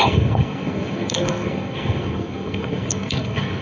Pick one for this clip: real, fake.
fake